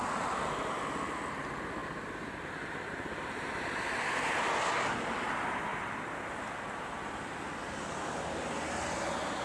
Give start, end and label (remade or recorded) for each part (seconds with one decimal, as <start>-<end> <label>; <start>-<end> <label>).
0.0-9.4 recorded